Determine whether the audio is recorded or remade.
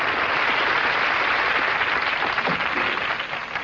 recorded